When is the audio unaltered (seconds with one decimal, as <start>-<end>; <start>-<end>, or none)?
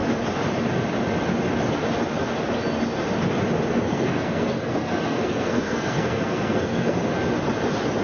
0.0-3.7; 7.0-8.0